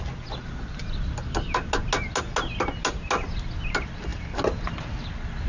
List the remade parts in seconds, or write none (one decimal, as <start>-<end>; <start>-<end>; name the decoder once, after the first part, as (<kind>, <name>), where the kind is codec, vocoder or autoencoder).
none